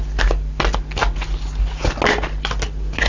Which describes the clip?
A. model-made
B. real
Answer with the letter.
B